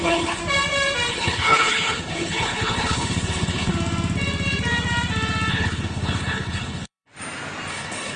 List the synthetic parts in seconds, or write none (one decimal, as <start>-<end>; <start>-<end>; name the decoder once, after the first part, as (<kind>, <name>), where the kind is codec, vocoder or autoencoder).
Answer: 0.0-0.4 (codec, HILCodec); 1.1-3.7; 5.5-7.1; 7.7-8.2